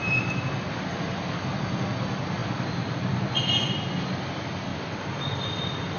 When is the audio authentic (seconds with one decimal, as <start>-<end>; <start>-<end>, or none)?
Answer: 0.0-4.7